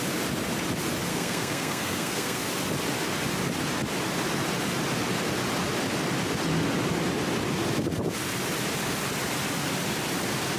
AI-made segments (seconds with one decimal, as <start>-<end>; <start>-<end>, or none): 1.1-2.4